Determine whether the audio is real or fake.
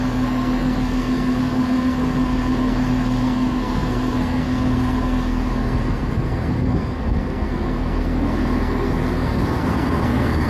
fake